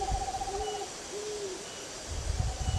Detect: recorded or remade recorded